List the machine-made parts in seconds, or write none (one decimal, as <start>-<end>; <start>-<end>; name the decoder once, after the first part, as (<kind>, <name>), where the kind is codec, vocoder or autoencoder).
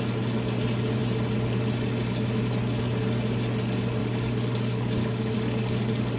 4.0-6.2 (codec, DAC)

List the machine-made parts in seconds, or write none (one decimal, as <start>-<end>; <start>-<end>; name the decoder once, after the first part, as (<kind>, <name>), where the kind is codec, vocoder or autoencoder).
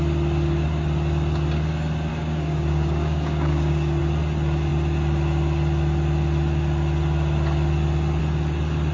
2.1-4.0 (codec, DAC)